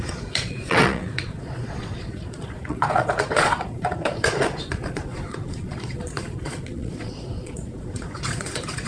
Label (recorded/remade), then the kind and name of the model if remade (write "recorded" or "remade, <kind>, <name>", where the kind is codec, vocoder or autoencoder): remade, vocoder, Vocos